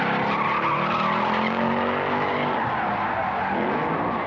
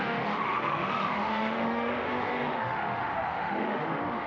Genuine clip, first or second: first